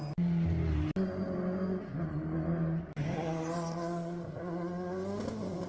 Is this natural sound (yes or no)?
yes